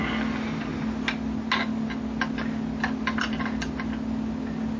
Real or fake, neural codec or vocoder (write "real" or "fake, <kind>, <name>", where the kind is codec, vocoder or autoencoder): real